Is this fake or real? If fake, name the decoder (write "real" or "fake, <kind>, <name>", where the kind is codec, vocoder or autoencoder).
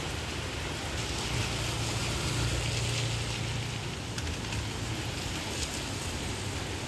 real